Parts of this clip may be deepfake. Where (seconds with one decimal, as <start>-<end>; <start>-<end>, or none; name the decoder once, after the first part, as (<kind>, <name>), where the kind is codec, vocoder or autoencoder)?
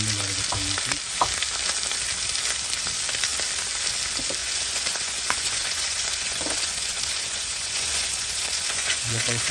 4.4-9.5 (vocoder, Vocos)